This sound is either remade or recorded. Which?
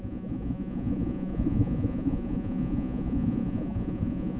remade